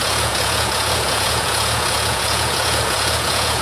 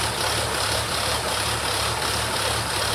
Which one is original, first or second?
second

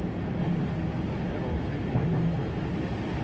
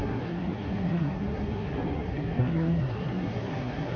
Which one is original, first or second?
first